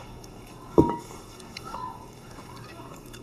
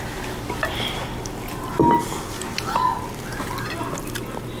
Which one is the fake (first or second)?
first